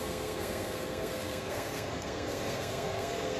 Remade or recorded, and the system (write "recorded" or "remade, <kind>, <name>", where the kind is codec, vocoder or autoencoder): remade, codec, SNAC